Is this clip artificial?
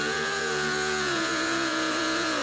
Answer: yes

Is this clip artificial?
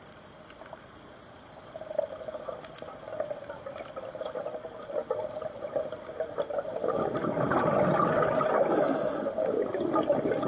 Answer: no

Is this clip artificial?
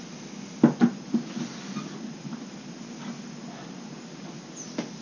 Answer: no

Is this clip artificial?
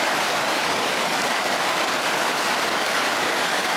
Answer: yes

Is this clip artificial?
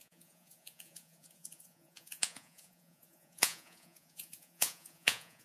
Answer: yes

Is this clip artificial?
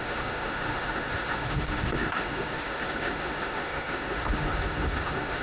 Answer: yes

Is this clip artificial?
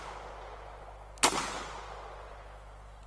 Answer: no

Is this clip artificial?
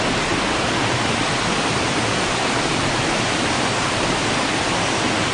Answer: no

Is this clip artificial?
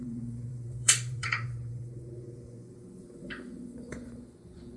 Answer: yes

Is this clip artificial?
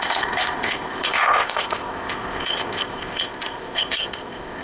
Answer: yes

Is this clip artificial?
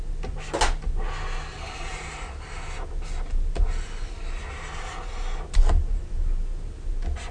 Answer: no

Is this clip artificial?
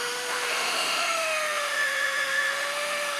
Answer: yes